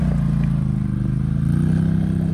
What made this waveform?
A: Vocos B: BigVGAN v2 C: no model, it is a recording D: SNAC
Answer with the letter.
C